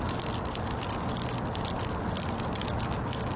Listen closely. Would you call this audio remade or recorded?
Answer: recorded